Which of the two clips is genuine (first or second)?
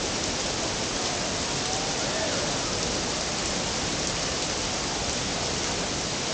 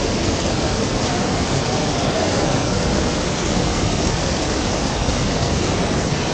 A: first